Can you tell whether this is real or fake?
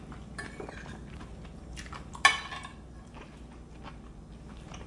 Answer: real